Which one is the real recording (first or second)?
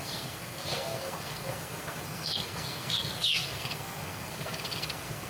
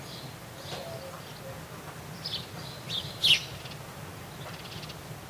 second